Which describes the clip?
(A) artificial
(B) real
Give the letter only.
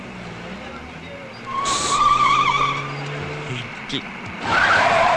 B